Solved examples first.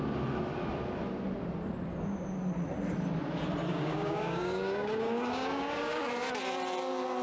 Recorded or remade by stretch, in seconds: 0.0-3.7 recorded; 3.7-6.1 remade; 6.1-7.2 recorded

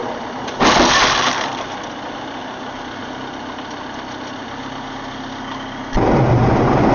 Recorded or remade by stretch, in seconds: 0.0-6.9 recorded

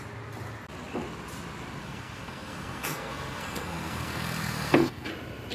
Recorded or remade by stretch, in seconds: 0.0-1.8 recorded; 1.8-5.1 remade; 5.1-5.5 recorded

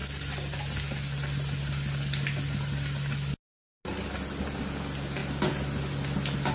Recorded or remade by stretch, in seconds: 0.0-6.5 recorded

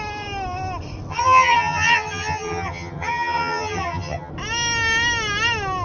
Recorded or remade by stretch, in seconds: 0.0-1.1 recorded; 1.1-4.3 remade; 4.3-5.8 recorded

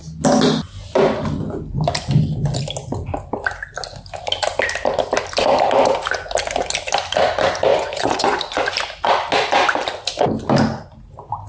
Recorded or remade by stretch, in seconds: 0.0-7.7 recorded; 7.7-8.4 remade; 8.4-11.5 recorded

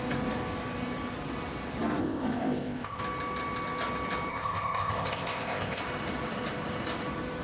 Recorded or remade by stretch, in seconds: 0.0-2.0 recorded; 2.0-3.0 remade; 3.0-4.3 recorded; 4.3-5.8 remade; 5.8-7.4 recorded

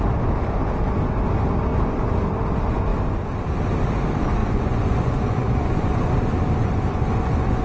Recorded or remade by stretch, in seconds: 0.0-4.4 recorded; 4.4-6.1 remade; 6.1-6.6 recorded; 6.6-7.6 remade